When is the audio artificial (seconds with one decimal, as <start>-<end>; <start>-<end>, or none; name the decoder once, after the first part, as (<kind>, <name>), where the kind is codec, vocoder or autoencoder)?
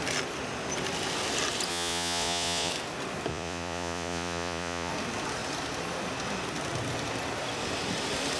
1.7-2.7 (vocoder, Vocos); 3.3-4.9